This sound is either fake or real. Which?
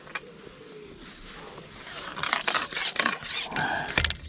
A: real